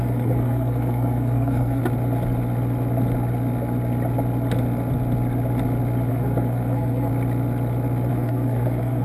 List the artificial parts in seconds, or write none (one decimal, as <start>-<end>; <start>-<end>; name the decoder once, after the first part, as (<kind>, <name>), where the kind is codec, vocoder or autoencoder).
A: 0.0-1.8 (codec, SNAC); 6.1-7.1; 8.1-9.0